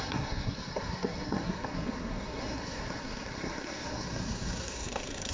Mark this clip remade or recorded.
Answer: remade